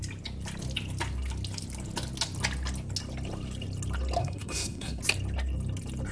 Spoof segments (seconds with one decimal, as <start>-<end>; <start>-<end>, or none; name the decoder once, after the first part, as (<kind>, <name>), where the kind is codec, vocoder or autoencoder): 4.2-5.0 (codec, SNAC)